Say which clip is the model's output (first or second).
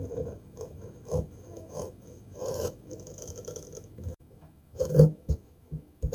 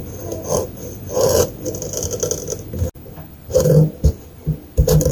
first